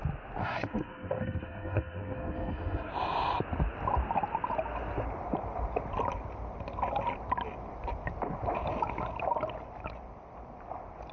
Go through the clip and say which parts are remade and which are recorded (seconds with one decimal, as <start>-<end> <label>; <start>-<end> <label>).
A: 0.0-0.4 recorded; 0.4-2.9 remade; 2.9-11.1 recorded